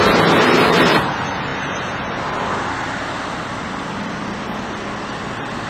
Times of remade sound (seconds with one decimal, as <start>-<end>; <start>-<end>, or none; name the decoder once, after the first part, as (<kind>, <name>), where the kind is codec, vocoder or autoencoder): none